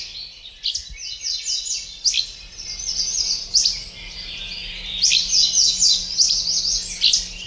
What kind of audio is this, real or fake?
real